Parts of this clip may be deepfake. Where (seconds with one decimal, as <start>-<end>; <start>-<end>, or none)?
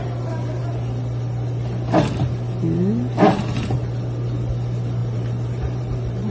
5.0-6.3